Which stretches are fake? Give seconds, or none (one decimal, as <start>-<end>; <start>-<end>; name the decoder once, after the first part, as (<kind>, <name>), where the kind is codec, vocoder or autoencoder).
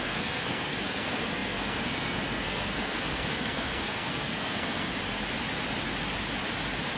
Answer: 0.0-4.9 (codec, SNAC)